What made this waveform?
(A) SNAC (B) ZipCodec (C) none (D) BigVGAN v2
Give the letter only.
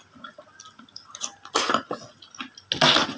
C